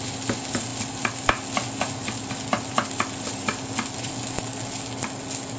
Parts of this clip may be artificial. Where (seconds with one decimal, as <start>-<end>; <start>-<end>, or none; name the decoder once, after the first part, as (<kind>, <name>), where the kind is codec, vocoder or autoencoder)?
none